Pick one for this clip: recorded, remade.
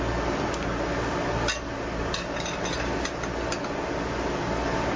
recorded